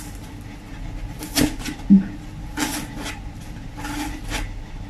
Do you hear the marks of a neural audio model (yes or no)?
no